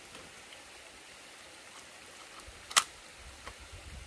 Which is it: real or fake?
real